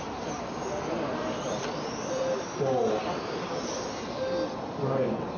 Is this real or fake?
real